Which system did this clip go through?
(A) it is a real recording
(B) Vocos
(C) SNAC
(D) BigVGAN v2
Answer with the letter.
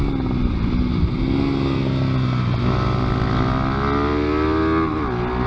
A